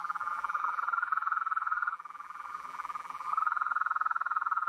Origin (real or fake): fake